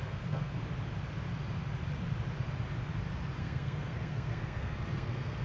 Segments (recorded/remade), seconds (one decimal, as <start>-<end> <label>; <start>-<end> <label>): 0.0-0.6 remade; 0.6-3.4 recorded; 3.4-5.4 remade